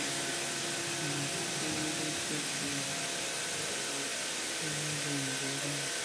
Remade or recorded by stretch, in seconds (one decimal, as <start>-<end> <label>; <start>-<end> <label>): 0.0-6.0 recorded